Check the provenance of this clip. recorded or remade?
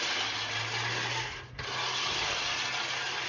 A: recorded